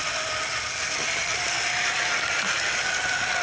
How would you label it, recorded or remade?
recorded